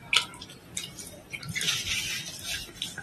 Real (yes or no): yes